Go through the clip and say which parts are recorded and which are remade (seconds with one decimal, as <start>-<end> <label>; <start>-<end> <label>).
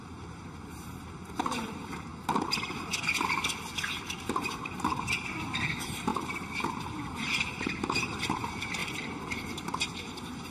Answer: 0.0-2.1 remade; 2.1-4.2 recorded; 4.2-6.1 remade; 6.1-6.7 recorded; 6.7-10.5 remade